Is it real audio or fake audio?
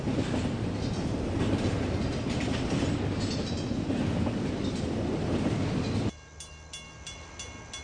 real